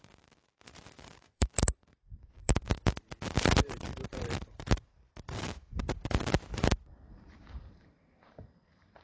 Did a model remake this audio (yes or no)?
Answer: yes